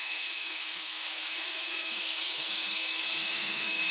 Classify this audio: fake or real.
fake